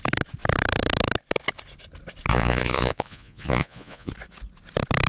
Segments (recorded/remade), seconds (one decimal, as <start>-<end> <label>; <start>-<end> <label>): 0.0-2.3 recorded; 2.3-4.1 remade; 4.1-5.1 recorded